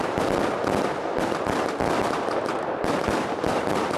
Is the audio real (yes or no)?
yes